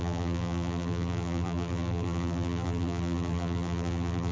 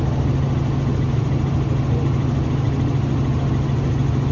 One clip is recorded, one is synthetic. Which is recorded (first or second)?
second